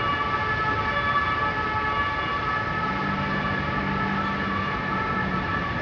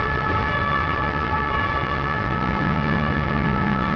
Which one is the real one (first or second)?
first